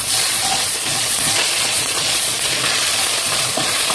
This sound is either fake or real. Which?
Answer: fake